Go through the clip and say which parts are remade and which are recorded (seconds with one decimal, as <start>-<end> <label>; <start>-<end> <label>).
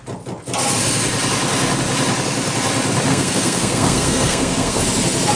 0.0-3.1 recorded; 3.1-4.8 remade; 4.8-5.4 recorded